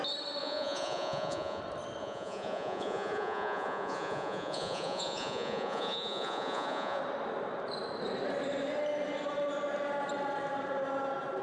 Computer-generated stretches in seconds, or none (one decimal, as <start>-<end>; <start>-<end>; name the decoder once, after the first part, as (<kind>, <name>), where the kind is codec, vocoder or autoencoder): 0.4-1.6 (vocoder, Vocos); 2.0-7.0